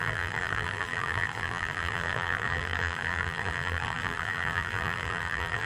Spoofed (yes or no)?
yes